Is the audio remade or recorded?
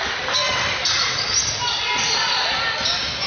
recorded